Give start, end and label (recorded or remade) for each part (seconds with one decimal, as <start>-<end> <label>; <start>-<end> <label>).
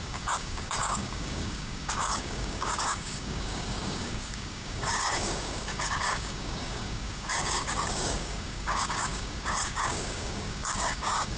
0.0-11.4 remade